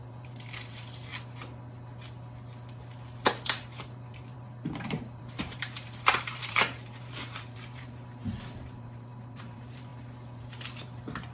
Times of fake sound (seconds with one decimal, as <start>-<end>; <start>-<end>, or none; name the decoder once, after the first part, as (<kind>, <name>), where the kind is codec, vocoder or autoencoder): 0.0-1.1 (vocoder, BigVGAN v2); 3.6-9.9; 10.4-11.3